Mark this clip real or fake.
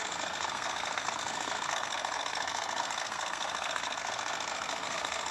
fake